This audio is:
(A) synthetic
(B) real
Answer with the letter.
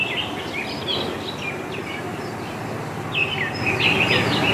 B